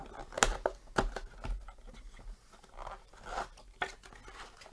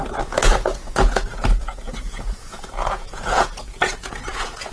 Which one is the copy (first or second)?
second